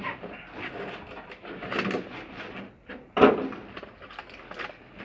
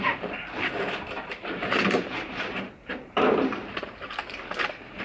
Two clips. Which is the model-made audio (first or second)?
second